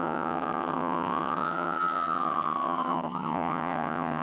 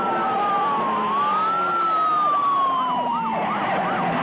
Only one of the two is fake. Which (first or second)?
first